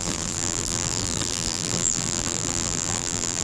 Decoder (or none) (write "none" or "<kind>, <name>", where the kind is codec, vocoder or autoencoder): vocoder, BigVGAN v2